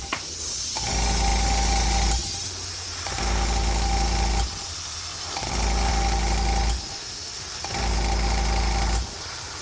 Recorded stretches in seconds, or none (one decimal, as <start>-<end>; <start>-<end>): 0.0-9.6